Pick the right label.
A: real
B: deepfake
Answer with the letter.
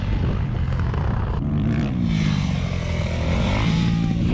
A